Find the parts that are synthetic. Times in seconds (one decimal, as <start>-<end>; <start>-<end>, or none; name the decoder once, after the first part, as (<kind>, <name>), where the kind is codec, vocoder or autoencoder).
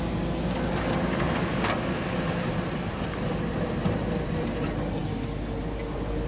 none